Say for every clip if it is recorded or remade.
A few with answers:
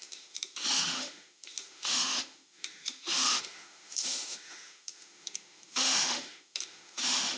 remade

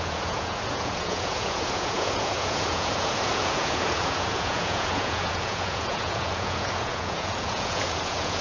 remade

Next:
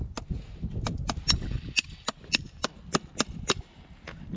recorded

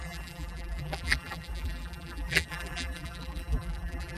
remade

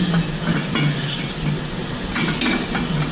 recorded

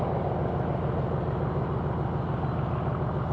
recorded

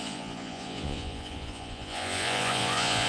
remade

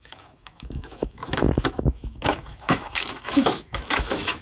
remade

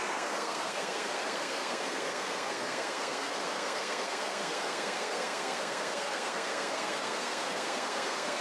remade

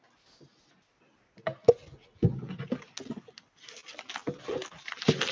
recorded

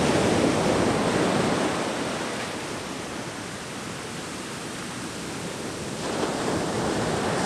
recorded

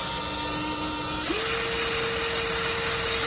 recorded